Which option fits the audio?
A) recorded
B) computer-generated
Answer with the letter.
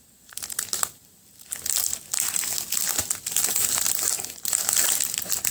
A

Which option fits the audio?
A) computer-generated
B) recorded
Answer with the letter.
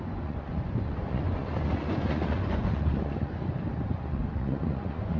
A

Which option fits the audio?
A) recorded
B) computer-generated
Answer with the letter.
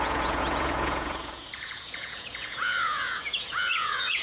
B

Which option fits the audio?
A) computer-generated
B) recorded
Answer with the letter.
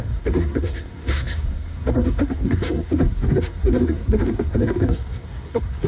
A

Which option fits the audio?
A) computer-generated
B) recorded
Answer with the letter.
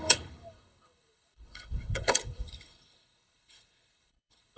A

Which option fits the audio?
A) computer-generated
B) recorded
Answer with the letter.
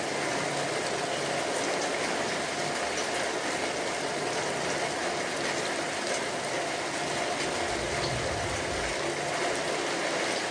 B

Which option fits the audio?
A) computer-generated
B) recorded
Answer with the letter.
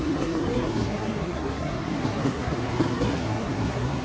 A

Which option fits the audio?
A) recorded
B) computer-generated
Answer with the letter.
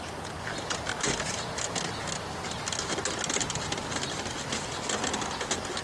A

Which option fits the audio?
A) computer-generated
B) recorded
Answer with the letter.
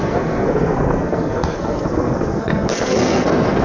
A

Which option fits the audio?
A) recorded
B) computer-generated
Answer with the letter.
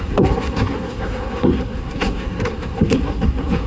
B